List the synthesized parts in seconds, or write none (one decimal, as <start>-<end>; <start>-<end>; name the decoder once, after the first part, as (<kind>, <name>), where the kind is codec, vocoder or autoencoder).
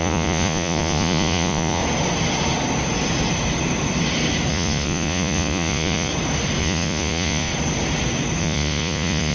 0.0-1.8 (vocoder, Vocos); 4.5-6.1; 6.6-7.5; 8.4-9.3